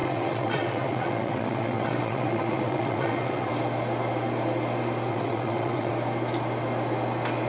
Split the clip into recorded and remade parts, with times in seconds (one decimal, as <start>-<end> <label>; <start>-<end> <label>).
0.0-3.5 remade; 3.5-5.1 recorded; 5.1-5.9 remade; 5.9-7.5 recorded